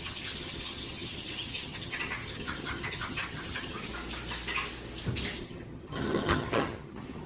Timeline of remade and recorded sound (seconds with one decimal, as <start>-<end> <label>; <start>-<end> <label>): 0.0-3.9 remade; 3.9-5.4 recorded; 5.4-7.3 remade